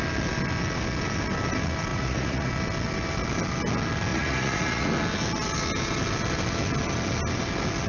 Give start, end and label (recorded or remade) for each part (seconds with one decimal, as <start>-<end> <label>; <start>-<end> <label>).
0.0-1.9 recorded; 1.9-2.5 remade; 2.5-4.1 recorded; 4.1-4.9 remade; 4.9-7.9 recorded